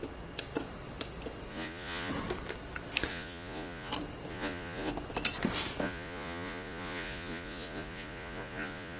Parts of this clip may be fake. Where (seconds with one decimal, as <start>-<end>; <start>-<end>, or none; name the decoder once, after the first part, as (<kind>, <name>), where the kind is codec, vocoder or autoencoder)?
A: 1.5-2.1 (vocoder, Vocos); 3.1-3.9; 4.3-4.9; 5.8-9.0